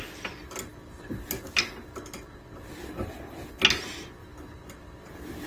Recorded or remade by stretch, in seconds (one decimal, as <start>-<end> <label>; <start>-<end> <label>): 0.0-4.2 recorded; 4.2-5.5 remade